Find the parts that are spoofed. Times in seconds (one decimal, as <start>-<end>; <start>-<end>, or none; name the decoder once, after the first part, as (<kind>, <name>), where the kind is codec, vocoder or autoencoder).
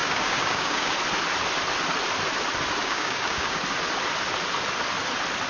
0.0-0.9 (codec, DAC); 2.8-3.6